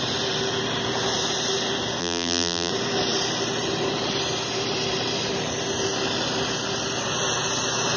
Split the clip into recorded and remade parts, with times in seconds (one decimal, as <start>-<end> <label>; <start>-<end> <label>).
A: 0.0-2.0 recorded; 2.0-2.7 remade; 2.7-8.0 recorded